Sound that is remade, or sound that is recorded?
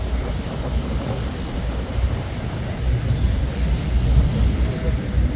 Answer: recorded